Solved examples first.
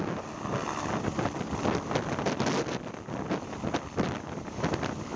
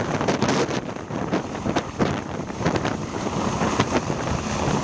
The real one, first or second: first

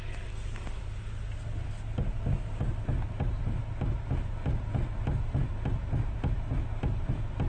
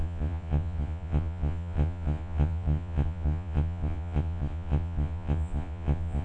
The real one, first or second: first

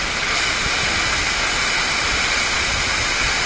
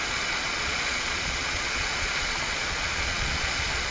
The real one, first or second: first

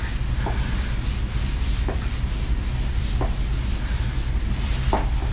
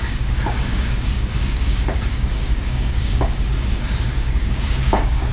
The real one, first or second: first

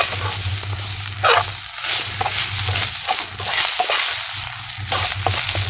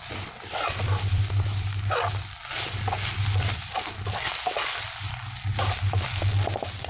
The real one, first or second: first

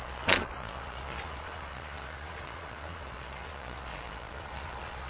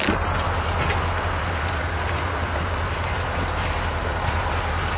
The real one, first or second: second